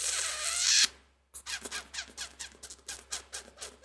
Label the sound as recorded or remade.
recorded